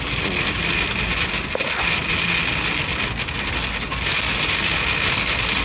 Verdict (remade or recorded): recorded